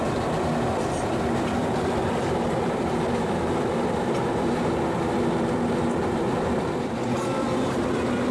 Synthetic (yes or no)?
yes